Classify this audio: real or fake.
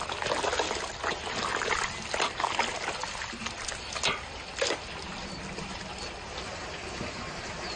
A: real